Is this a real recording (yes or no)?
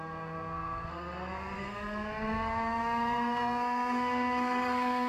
no